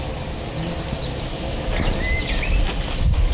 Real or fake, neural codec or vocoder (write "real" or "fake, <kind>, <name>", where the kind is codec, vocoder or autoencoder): real